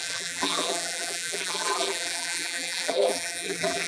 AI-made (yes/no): yes